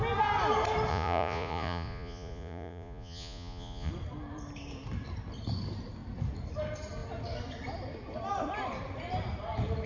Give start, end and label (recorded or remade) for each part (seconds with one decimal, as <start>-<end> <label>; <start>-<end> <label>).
0.0-0.9 recorded; 0.9-3.9 remade; 3.9-9.9 recorded